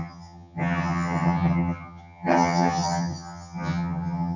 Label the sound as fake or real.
fake